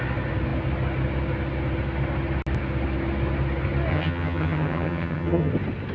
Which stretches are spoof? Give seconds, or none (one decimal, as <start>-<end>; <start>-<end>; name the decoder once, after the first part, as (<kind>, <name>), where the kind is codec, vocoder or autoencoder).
3.9-5.5 (vocoder, HiFi-GAN)